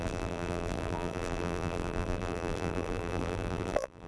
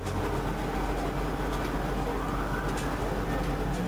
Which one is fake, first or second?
first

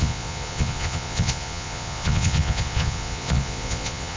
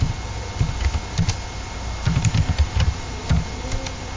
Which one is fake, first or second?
first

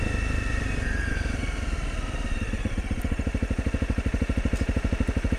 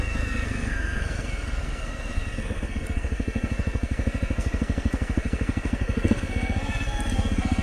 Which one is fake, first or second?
second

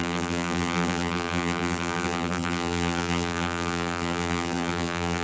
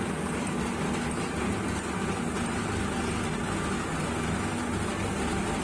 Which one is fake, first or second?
first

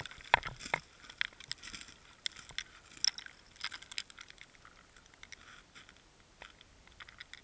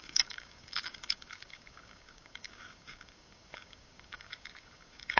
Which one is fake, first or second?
second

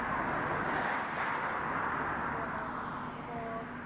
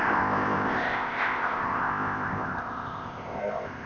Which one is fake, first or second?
second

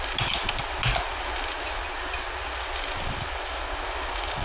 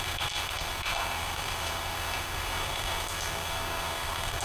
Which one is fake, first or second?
second